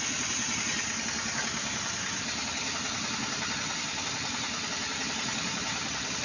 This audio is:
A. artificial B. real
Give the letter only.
B